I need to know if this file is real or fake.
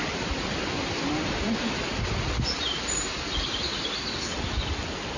real